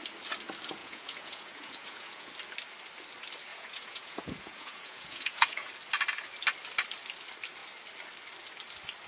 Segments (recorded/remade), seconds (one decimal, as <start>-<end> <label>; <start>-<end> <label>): 0.0-0.8 recorded; 0.8-2.3 remade; 2.3-3.5 recorded; 3.5-5.7 remade; 5.7-9.1 recorded